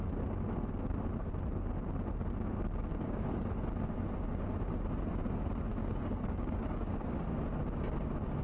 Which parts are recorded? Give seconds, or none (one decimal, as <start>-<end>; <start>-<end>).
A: 0.0-2.9; 3.5-5.7; 7.1-8.4